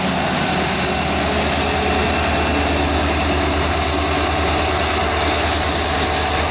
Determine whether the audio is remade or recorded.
recorded